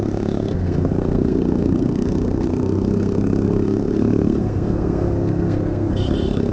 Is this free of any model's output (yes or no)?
no